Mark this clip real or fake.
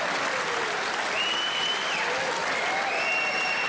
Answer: real